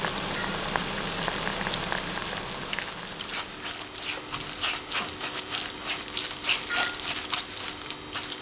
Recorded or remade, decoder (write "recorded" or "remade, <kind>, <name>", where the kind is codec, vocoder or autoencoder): recorded